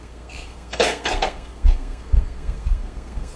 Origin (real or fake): fake